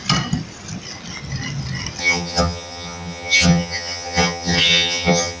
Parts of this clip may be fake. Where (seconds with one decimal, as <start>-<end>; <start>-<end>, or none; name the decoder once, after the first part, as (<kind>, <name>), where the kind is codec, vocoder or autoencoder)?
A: 2.0-5.4 (vocoder, HiFi-GAN)